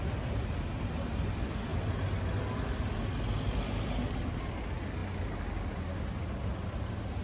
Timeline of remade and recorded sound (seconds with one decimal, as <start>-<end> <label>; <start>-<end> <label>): 0.0-7.2 recorded